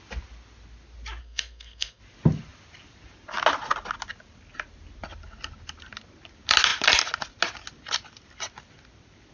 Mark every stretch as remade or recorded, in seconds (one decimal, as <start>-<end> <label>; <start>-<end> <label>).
0.0-1.2 recorded; 1.2-2.0 remade; 2.0-9.3 recorded

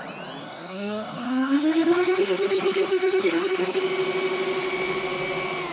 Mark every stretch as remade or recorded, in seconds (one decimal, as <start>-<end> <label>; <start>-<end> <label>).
0.0-0.4 recorded; 0.4-3.8 remade; 3.8-5.7 recorded

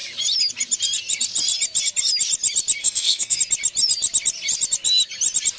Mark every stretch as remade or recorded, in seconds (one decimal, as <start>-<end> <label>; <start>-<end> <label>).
0.0-2.8 recorded; 2.8-3.4 remade; 3.4-5.6 recorded

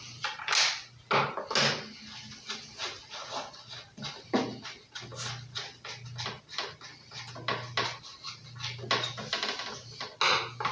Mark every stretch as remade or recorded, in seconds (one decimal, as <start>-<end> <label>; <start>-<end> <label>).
0.0-10.7 recorded

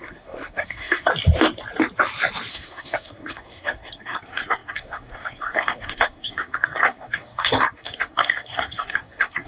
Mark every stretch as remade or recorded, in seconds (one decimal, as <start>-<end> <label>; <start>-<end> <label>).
0.0-1.1 remade; 1.1-2.5 recorded; 2.5-9.5 remade